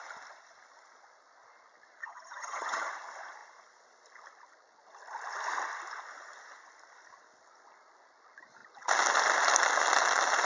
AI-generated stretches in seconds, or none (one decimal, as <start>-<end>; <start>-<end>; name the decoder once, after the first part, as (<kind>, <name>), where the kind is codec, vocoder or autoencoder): 2.0-2.9 (vocoder, HiFi-GAN)